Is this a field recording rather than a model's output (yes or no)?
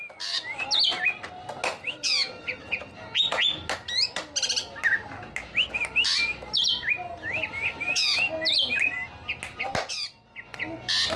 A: yes